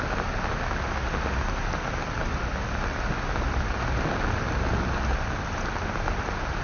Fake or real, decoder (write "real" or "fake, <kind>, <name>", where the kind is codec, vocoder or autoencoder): real